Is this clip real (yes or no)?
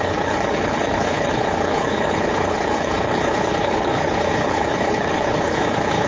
no